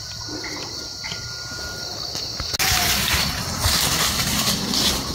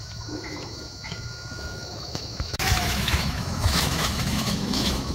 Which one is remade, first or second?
second